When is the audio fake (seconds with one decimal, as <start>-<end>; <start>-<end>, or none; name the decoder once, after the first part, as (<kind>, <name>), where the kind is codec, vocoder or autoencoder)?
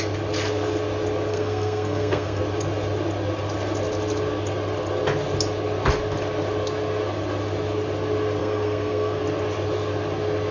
1.3-2.4 (codec, SNAC); 8.4-9.2